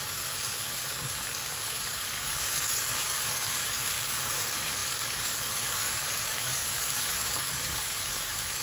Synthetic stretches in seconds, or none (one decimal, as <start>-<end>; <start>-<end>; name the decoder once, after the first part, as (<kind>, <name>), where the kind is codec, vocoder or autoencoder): 0.0-8.6 (codec, DAC)